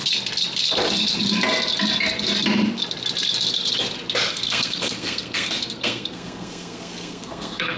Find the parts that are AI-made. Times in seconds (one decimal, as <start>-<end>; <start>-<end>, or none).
4.3-7.8